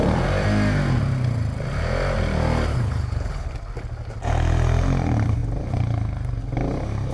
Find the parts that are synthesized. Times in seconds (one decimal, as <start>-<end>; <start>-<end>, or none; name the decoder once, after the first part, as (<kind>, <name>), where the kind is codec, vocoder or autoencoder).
2.7-3.5 (codec, HILCodec)